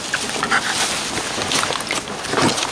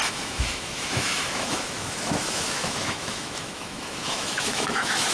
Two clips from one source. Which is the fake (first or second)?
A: second